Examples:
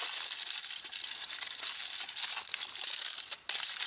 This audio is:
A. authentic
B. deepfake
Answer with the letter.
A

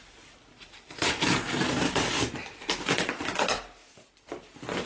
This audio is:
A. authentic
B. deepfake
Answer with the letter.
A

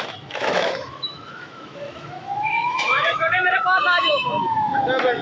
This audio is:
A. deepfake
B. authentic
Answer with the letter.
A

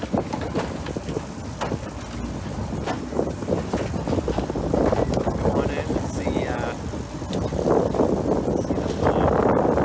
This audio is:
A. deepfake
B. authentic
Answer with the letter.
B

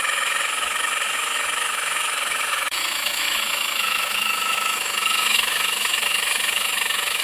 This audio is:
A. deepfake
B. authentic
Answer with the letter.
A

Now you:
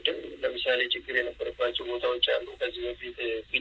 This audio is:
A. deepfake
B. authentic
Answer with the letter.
A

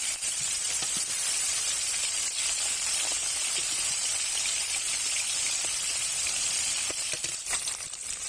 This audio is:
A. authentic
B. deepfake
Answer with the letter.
B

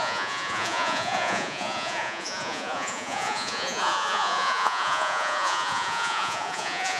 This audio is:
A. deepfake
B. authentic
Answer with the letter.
A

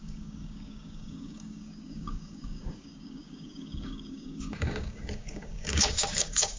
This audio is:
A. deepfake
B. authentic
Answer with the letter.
A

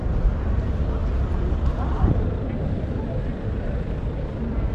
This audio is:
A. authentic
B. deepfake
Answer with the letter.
B